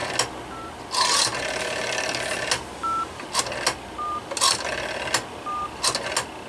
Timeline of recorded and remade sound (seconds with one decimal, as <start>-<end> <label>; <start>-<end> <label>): 0.0-6.5 recorded